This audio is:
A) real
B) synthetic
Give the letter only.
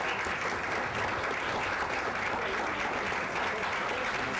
A